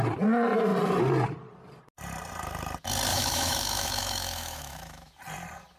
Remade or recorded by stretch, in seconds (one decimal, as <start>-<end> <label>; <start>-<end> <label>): 0.0-3.1 recorded; 3.1-5.1 remade; 5.1-5.8 recorded